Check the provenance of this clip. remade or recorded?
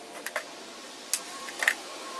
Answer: recorded